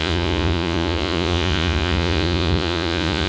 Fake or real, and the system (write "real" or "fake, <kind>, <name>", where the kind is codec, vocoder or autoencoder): fake, vocoder, Vocos